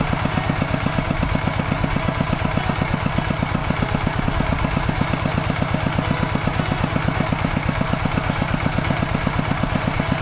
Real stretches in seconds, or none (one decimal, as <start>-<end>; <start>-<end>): 0.0-3.6; 4.2-10.2